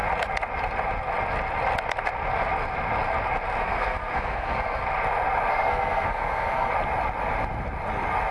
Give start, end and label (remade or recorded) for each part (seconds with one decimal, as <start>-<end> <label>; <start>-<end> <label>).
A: 0.0-3.6 recorded; 3.6-4.8 remade; 4.8-5.5 recorded; 5.5-6.7 remade; 6.7-8.3 recorded